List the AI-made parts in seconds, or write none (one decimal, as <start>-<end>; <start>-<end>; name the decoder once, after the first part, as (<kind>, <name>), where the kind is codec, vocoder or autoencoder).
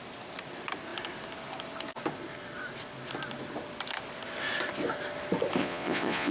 5.6-6.3 (vocoder, Vocos)